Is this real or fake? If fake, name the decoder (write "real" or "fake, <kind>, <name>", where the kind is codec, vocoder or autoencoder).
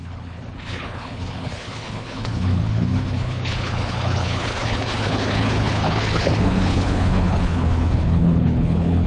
fake, codec, HILCodec